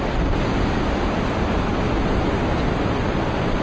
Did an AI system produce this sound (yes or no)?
no